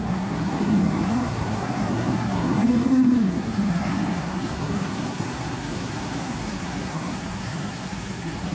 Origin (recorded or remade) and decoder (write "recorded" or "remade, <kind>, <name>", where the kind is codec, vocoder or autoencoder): remade, codec, SNAC